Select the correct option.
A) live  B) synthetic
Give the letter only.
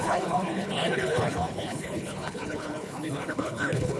B